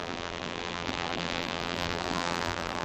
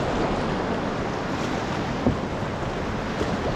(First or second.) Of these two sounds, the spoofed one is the first